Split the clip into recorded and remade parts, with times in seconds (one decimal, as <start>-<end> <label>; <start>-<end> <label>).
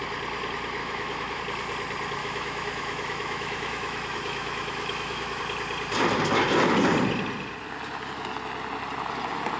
0.0-0.8 recorded; 0.8-1.4 remade; 1.4-2.2 recorded; 2.2-5.4 remade; 5.4-9.6 recorded